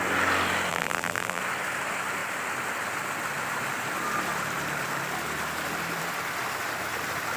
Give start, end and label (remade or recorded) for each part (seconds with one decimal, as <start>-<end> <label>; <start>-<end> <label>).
0.0-0.7 recorded; 0.7-1.4 remade; 1.4-7.4 recorded